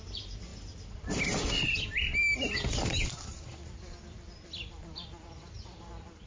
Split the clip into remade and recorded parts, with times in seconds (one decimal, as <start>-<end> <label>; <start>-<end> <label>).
0.0-6.3 recorded